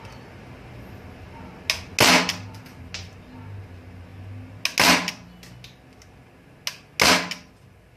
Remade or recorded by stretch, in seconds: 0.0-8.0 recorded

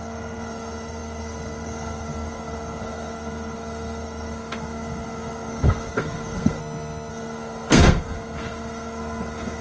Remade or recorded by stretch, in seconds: 0.0-6.6 remade; 6.6-7.1 recorded; 7.1-9.6 remade

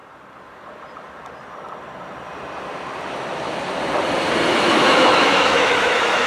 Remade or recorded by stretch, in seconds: 0.0-4.5 recorded; 4.5-6.3 remade

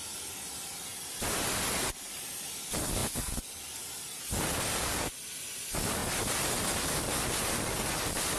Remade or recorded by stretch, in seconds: 0.0-8.4 recorded

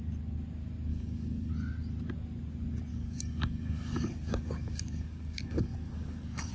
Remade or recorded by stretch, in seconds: 0.0-0.9 recorded; 0.9-1.5 remade; 1.5-2.9 recorded; 2.9-6.5 remade

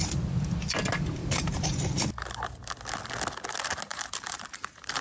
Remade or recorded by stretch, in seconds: 0.0-1.2 recorded; 1.2-2.7 remade; 2.7-3.9 recorded; 3.9-5.0 remade

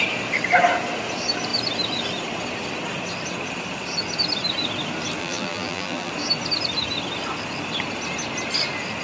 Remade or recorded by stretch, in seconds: 0.0-5.2 recorded; 5.2-6.1 remade; 6.1-9.0 recorded

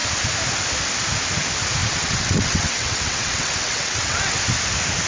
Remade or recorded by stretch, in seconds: 0.0-1.8 recorded; 1.8-4.4 remade; 4.4-5.1 recorded